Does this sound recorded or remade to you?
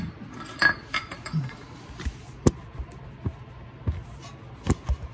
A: recorded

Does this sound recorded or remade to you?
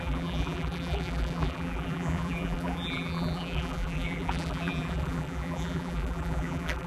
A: remade